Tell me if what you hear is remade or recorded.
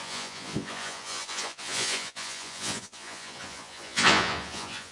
remade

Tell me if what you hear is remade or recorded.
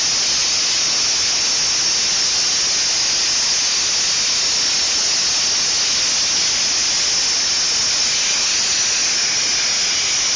recorded